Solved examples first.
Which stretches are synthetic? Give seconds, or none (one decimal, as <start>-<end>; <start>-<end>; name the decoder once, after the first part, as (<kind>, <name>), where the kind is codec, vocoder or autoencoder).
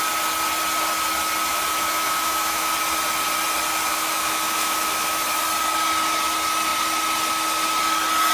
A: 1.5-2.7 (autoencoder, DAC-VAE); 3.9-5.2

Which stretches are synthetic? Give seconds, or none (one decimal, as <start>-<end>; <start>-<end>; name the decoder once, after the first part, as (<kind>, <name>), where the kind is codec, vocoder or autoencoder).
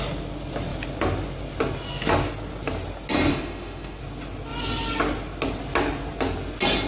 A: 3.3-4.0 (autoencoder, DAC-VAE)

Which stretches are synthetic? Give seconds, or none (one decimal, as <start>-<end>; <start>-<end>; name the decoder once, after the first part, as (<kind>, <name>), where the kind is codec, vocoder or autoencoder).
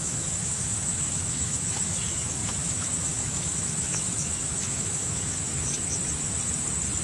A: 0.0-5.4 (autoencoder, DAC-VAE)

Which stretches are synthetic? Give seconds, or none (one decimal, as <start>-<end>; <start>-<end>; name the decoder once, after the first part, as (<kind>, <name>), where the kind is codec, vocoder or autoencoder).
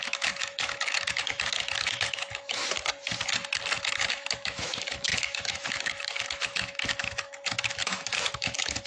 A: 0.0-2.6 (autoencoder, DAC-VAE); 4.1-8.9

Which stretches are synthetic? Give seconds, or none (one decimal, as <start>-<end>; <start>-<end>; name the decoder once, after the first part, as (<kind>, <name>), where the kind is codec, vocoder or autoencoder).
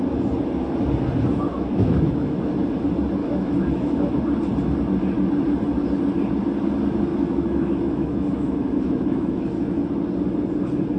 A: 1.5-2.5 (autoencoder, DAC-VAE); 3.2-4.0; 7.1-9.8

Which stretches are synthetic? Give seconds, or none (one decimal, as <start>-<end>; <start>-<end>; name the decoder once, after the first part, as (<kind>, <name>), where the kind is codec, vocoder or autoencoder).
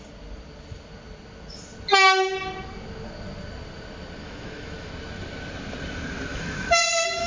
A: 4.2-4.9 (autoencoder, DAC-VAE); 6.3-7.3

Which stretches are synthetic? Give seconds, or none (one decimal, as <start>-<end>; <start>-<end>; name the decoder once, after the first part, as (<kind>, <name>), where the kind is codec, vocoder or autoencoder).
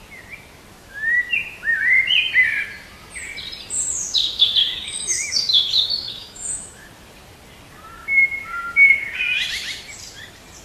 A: 0.7-1.8 (autoencoder, DAC-VAE); 4.2-6.9; 8.0-9.2